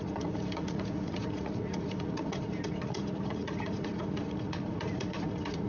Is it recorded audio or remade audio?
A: remade